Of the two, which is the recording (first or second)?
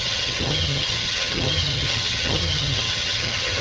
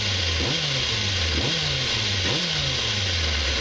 second